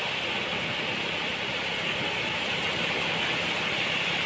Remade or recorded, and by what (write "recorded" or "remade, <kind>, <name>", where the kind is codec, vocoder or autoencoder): recorded